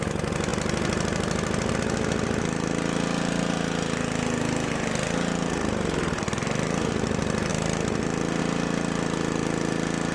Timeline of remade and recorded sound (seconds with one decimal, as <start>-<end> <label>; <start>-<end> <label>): 0.0-10.1 recorded